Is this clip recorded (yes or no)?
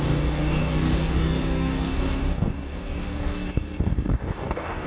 no